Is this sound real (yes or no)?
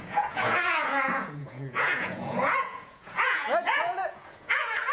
no